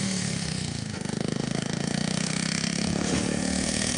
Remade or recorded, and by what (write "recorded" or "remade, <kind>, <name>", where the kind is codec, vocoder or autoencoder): remade, autoencoder, DAC-VAE